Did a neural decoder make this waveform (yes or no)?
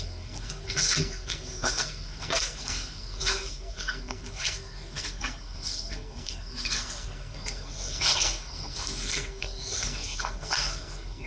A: yes